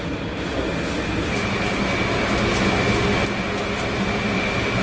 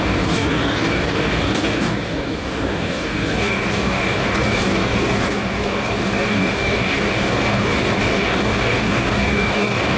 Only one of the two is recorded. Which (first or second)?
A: first